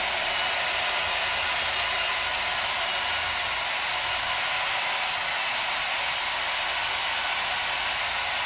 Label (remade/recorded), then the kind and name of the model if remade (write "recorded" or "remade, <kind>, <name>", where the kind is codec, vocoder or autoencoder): recorded